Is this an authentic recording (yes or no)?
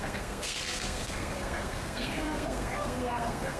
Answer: no